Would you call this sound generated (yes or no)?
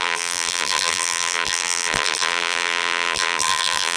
yes